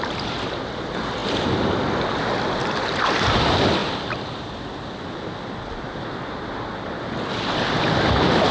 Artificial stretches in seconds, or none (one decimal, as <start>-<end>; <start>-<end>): none